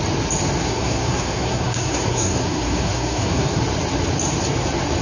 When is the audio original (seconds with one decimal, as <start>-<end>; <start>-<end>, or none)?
0.0-0.6; 3.6-5.0